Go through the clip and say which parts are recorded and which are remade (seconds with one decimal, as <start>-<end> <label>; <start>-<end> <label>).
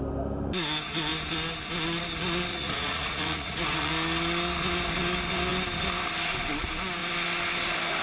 0.0-2.5 recorded; 2.5-3.9 remade; 3.9-8.0 recorded